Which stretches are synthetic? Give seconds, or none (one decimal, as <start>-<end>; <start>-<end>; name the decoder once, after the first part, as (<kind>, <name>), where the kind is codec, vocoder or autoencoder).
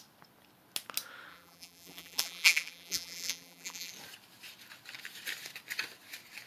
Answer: 1.3-3.9 (vocoder, BigVGAN v2)